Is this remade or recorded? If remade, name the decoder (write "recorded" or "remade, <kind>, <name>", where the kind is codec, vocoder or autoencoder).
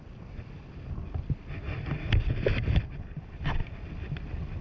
recorded